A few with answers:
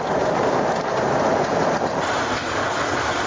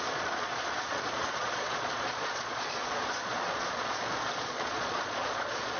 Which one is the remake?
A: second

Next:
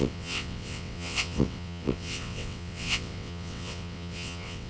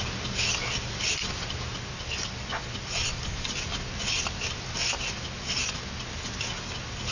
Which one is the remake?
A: first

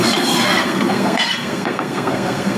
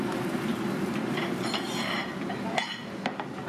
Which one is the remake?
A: first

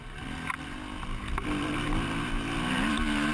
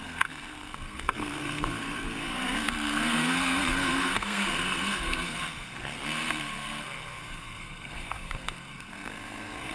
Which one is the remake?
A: second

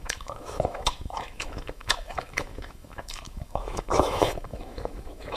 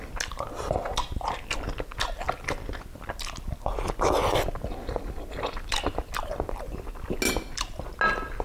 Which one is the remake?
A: first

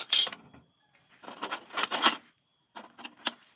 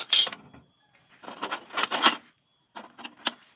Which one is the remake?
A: first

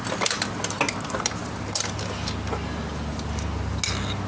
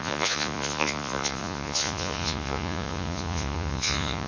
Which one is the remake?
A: second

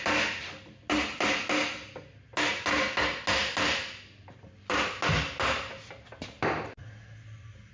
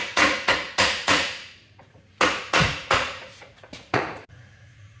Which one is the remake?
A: second